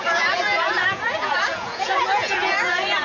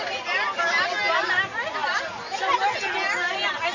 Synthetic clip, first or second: first